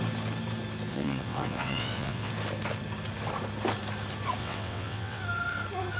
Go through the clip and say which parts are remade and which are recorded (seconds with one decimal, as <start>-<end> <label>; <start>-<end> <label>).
0.0-0.9 recorded; 0.9-2.3 remade; 2.3-4.4 recorded; 4.4-5.2 remade; 5.2-6.0 recorded

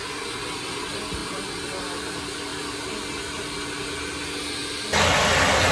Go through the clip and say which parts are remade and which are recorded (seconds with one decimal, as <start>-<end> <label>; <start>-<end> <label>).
0.0-5.7 recorded

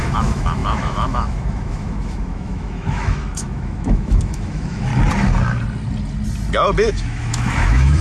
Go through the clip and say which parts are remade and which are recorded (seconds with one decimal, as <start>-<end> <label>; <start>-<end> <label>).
0.0-4.9 remade; 4.9-6.9 recorded; 6.9-8.0 remade

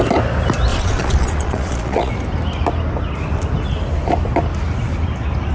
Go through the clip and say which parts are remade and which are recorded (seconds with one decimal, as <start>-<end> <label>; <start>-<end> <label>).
0.0-0.7 recorded; 0.7-2.1 remade; 2.1-5.5 recorded

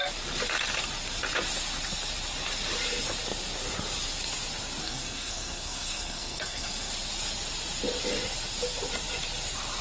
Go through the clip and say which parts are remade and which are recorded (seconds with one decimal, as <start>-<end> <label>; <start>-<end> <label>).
0.0-4.8 recorded; 4.8-6.9 remade; 6.9-9.8 recorded

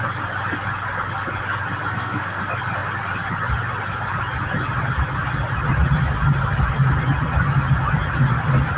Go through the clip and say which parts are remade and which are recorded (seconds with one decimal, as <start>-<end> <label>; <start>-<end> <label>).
0.0-1.9 recorded; 1.9-2.4 remade; 2.4-8.8 recorded

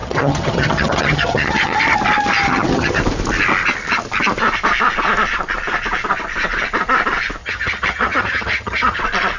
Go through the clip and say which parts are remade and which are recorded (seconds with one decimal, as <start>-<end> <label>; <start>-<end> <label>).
0.0-1.8 remade; 1.8-2.4 recorded; 2.4-3.0 remade; 3.0-7.4 recorded; 7.4-9.0 remade; 9.0-9.4 recorded